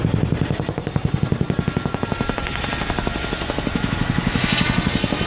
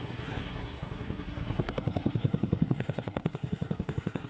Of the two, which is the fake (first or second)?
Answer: second